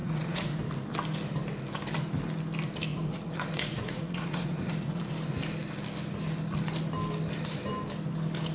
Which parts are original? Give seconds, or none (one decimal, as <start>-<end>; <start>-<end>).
0.6-2.9; 5.0-8.5